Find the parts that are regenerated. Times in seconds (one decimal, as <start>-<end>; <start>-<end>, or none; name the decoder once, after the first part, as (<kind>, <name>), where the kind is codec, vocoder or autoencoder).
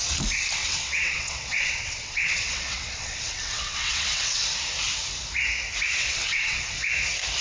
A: 0.6-4.5 (vocoder, WaveNeXt); 6.0-6.6